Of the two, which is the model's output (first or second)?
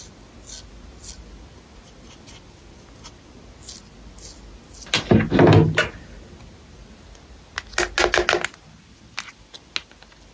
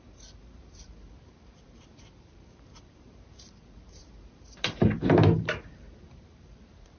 second